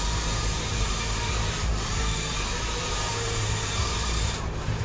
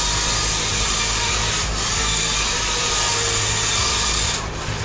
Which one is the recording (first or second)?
second